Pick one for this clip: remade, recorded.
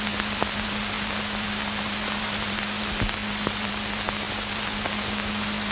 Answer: recorded